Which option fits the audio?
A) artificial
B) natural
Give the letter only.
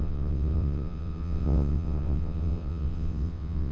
A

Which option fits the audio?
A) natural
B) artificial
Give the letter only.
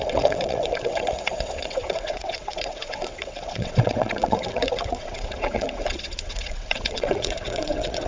B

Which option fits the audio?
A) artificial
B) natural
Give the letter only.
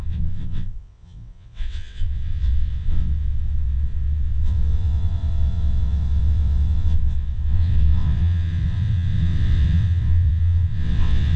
A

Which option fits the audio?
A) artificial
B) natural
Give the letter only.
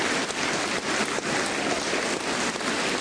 B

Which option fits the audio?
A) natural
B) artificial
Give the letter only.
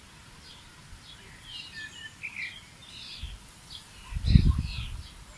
A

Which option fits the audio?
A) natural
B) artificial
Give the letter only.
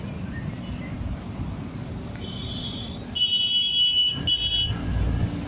A